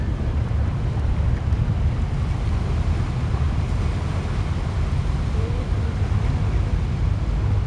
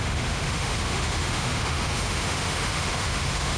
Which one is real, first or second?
first